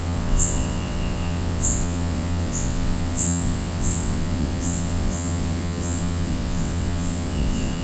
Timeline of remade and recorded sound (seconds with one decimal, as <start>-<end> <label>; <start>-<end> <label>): 0.0-7.8 remade